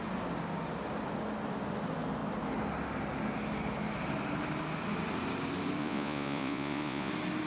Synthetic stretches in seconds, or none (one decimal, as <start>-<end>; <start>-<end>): 5.8-7.1